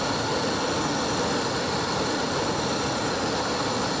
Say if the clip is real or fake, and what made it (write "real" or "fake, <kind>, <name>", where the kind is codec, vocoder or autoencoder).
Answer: real